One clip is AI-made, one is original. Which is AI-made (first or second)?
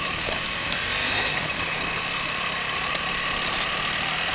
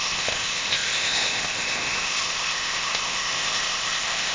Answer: second